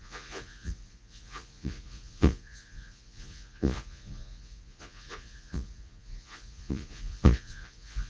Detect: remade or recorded remade